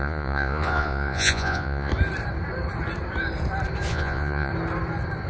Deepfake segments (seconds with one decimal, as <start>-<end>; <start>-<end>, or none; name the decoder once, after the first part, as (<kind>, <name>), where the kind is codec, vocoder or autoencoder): 0.0-1.9 (vocoder, Vocos); 3.9-4.5